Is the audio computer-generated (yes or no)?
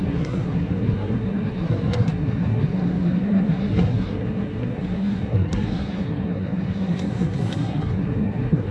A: yes